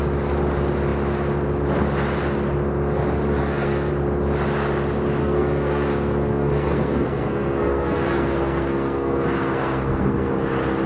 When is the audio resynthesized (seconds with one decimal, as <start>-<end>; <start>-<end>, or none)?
3.4-3.9; 5.2-10.3